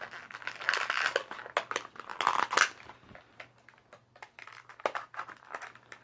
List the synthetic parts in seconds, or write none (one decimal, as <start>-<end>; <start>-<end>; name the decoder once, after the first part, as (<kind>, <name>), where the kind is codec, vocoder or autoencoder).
none